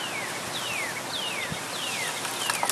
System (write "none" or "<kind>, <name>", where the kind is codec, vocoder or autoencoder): none